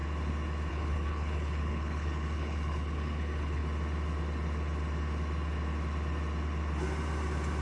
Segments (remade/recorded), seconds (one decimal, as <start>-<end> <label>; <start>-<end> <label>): 0.0-0.7 recorded; 0.7-3.6 remade; 3.6-7.6 recorded